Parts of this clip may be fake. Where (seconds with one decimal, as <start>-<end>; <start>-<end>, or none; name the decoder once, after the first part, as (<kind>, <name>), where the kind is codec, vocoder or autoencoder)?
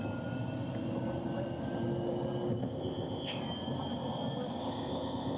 2.6-3.4 (codec, ZipCodec); 4.6-5.4